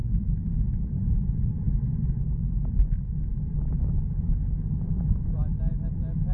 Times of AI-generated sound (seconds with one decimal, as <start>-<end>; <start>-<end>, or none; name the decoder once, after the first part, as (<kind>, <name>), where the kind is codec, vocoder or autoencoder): 0.0-1.9 (vocoder, BigVGAN v2)